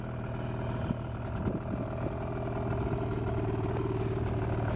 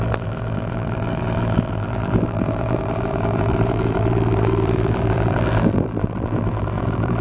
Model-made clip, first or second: second